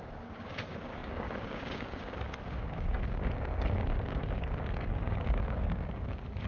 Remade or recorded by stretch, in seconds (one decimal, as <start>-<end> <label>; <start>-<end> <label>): 0.0-6.5 remade